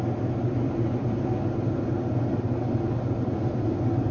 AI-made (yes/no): no